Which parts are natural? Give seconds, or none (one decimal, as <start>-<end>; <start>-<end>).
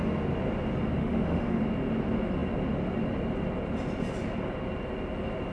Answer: 0.0-1.0; 1.6-5.5